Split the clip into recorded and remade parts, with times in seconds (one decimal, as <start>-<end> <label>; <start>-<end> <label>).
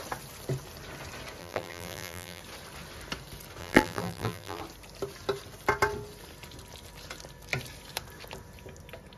0.0-1.4 recorded; 1.4-2.4 remade; 2.4-3.6 recorded; 3.6-4.6 remade; 4.6-9.2 recorded